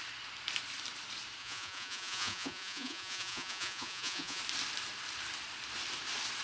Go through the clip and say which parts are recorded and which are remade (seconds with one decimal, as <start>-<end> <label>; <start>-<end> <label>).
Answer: 0.0-1.4 recorded; 1.4-4.4 remade; 4.4-6.4 recorded